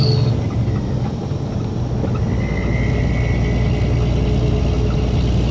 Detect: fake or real real